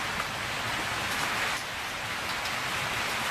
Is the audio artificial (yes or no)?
no